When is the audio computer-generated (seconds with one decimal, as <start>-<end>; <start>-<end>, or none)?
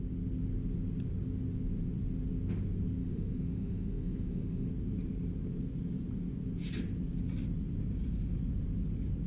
3.0-4.7